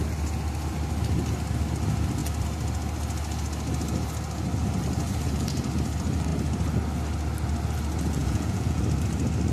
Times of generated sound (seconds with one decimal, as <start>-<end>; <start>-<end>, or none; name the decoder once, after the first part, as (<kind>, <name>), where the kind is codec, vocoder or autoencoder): 8.2-8.8 (vocoder, Vocos)